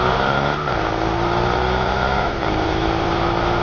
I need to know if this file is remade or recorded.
recorded